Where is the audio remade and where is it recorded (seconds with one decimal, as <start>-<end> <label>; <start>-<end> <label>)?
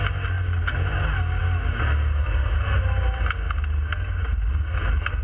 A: 0.0-5.2 recorded